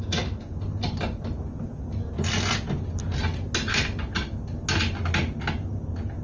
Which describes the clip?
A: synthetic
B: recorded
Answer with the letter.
B